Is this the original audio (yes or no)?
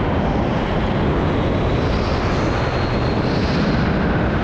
yes